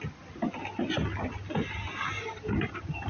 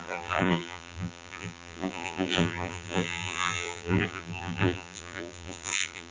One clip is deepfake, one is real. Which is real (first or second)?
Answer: first